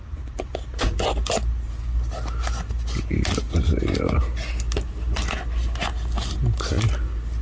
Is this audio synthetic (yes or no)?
no